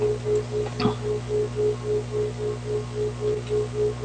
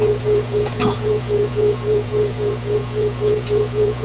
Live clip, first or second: first